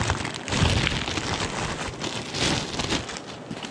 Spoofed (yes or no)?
no